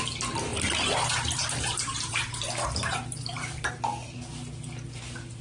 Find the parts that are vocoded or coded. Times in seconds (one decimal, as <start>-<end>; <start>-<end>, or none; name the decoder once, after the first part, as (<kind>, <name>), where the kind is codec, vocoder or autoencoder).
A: 0.5-3.7 (vocoder, BigVGAN v2)